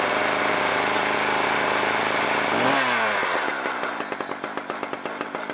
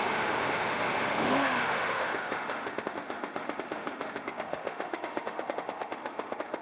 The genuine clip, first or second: first